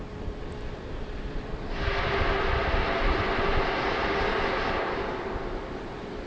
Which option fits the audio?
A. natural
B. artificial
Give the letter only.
A